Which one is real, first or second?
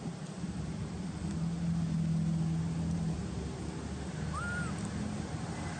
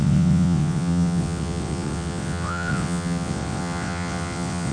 first